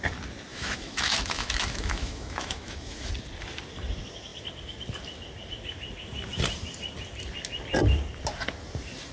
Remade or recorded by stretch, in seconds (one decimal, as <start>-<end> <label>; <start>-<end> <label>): 0.0-0.5 recorded; 0.5-3.1 remade; 3.1-9.1 recorded